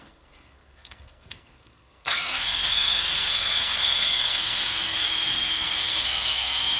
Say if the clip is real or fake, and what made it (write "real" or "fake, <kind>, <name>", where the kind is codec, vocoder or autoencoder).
fake, codec, SNAC